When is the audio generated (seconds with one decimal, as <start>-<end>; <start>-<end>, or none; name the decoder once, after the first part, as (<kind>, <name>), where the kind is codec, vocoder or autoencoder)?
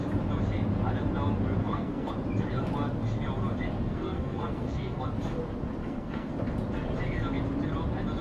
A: 1.6-2.1 (codec, SNAC); 3.9-5.0; 5.8-6.3